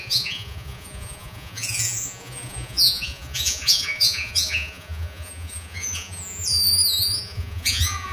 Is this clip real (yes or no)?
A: no